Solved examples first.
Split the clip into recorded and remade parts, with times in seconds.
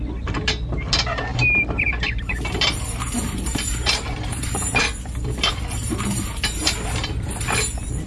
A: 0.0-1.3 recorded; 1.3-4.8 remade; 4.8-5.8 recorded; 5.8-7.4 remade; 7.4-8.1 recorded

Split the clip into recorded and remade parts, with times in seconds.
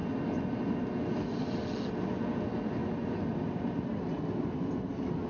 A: 0.0-5.3 recorded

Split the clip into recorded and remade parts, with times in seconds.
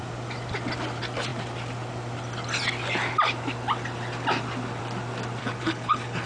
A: 0.0-5.4 recorded; 5.4-6.3 remade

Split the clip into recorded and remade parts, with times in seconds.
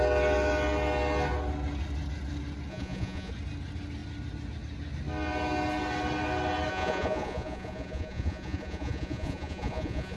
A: 0.0-2.7 recorded; 2.7-3.3 remade; 3.3-6.7 recorded; 6.7-10.2 remade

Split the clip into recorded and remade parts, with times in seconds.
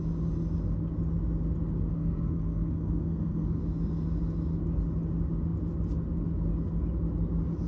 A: 0.0-1.9 recorded; 1.9-3.6 remade; 3.6-7.7 recorded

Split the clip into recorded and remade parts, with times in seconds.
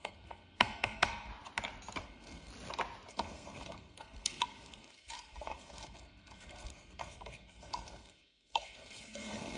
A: 0.0-1.3 remade; 1.3-2.0 recorded; 2.0-2.5 remade; 2.5-3.1 recorded; 3.1-9.6 remade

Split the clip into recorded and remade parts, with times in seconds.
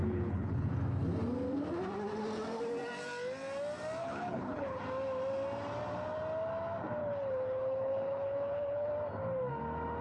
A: 0.0-0.7 remade; 0.7-4.0 recorded; 4.0-4.8 remade; 4.8-7.0 recorded; 7.0-8.9 remade; 8.9-10.0 recorded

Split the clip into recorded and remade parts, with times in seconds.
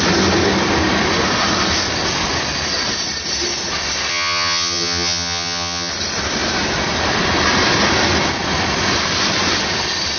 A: 0.0-4.1 recorded; 4.1-5.9 remade; 5.9-10.2 recorded